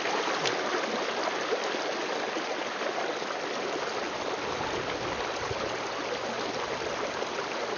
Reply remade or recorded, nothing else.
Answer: recorded